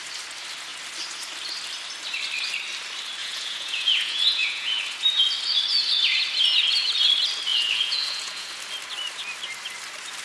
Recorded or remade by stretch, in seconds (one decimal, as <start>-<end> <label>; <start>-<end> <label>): 0.0-3.2 recorded; 3.2-4.8 remade; 4.8-7.5 recorded; 7.5-8.6 remade; 8.6-10.2 recorded

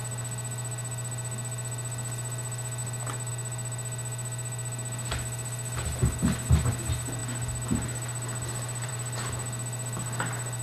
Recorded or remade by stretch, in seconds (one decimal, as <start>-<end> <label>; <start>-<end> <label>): 0.0-10.6 recorded

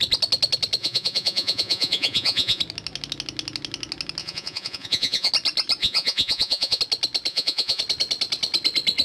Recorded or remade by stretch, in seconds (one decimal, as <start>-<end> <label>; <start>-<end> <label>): 0.0-0.8 recorded; 0.8-2.6 remade; 2.6-4.2 recorded; 4.2-5.3 remade; 5.3-5.8 recorded; 5.8-6.8 remade; 6.8-7.3 recorded; 7.3-7.8 remade; 7.8-9.0 recorded